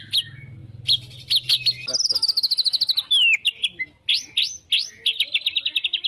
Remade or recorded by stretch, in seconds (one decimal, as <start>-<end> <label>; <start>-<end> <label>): 0.0-6.1 recorded